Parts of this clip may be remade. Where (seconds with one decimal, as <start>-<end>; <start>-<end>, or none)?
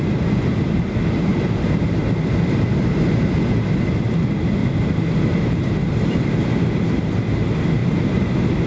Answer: 1.3-2.1; 4.6-6.3; 7.8-8.7